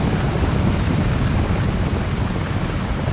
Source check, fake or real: real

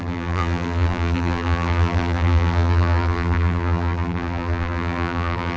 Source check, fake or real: fake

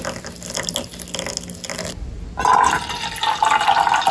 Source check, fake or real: real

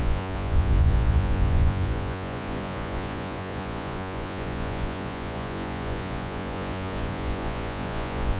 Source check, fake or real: fake